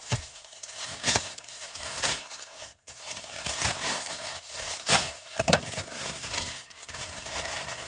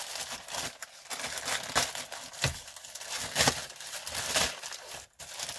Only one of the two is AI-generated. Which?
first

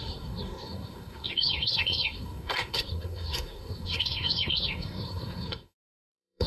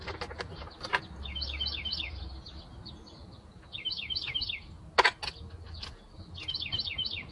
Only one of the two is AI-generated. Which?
first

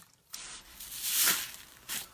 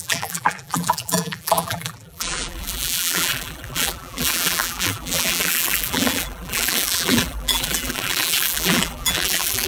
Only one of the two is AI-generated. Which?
second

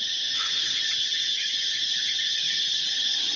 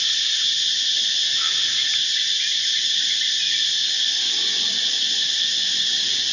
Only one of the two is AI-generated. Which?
first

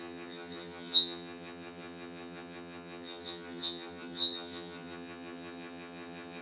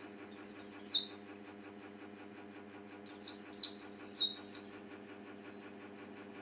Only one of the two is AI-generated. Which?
first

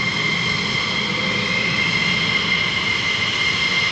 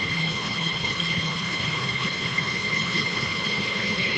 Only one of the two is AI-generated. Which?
second